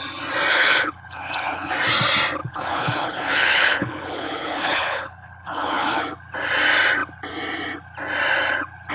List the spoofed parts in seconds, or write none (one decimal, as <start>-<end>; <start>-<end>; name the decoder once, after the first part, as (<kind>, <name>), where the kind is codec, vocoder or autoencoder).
0.5-1.7 (codec, HILCodec); 2.4-6.0